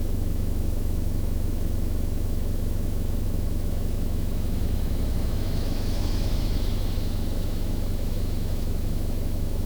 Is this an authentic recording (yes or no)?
no